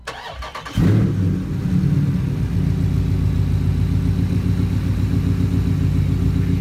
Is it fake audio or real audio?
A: real